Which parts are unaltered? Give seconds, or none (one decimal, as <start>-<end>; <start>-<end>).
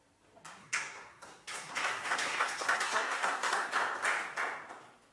0.0-0.6; 3.7-5.1